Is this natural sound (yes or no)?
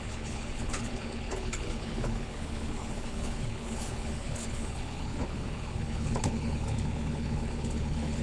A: no